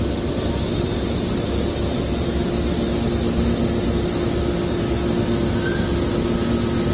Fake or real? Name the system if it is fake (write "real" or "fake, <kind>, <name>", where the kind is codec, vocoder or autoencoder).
real